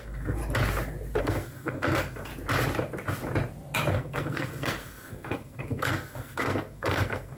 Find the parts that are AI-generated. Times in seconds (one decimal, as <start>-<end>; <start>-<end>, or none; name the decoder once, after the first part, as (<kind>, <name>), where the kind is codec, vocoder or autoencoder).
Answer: 0.0-0.4 (codec, SNAC); 1.2-2.3; 3.9-7.4